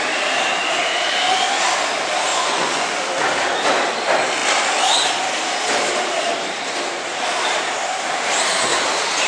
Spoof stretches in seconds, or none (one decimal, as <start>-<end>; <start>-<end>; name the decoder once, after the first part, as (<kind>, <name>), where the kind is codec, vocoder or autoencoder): 2.3-3.0 (vocoder, Vocos)